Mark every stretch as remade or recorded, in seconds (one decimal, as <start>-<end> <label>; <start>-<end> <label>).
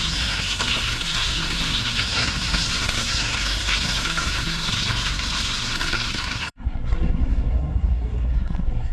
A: 0.0-8.9 remade